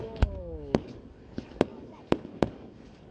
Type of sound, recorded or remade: remade